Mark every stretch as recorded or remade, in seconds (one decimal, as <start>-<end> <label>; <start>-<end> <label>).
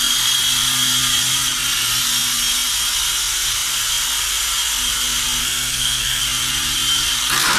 0.0-5.4 recorded; 5.4-6.2 remade; 6.2-7.6 recorded